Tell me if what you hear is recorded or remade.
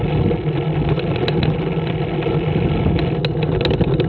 recorded